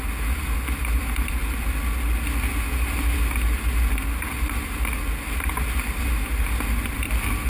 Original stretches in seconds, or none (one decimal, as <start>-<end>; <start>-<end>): 0.0-7.5